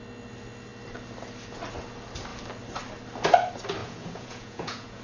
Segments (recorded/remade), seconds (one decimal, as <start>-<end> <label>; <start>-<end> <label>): 0.0-3.8 recorded; 3.8-5.0 remade